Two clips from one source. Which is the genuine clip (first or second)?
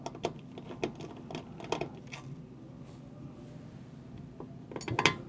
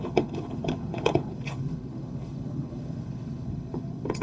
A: first